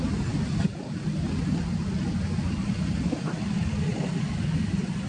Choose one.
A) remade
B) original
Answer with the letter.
B